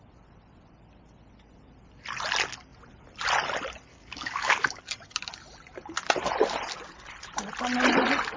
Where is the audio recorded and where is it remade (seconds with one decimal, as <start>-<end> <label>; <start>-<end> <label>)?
0.0-3.9 recorded; 3.9-4.8 remade; 4.8-8.4 recorded